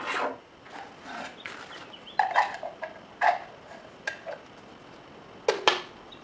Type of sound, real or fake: real